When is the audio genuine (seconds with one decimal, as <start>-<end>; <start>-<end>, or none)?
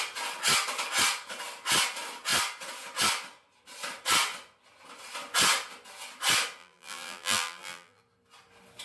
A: 0.0-6.6; 8.0-8.8